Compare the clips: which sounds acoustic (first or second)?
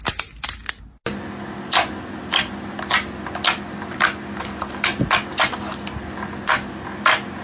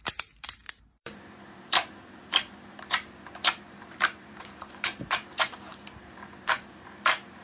first